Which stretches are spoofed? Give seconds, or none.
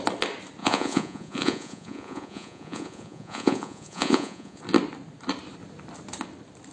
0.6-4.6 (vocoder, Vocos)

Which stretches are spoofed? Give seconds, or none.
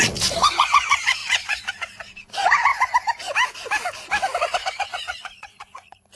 0.0-2.7 (vocoder, Vocos); 4.4-6.2